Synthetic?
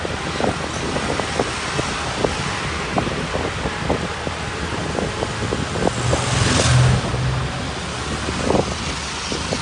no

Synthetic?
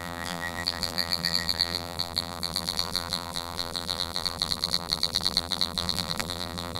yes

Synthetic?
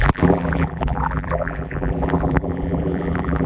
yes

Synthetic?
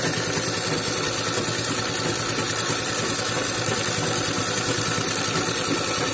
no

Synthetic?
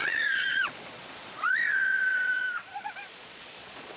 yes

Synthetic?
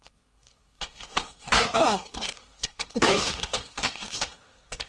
yes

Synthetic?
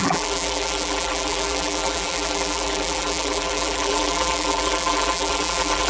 yes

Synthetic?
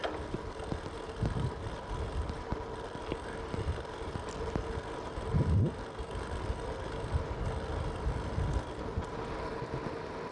no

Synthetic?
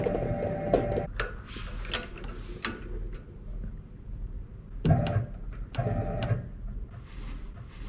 no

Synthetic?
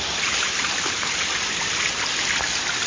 no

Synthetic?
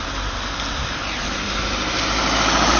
no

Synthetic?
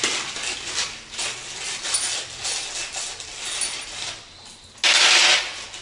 no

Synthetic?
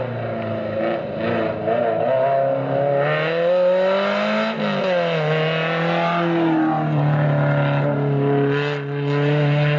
no